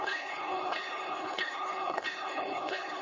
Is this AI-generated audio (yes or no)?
yes